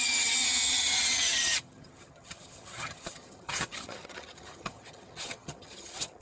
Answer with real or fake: fake